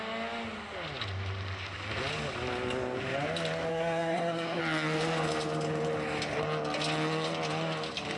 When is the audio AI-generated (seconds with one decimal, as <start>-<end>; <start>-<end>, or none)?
3.7-4.6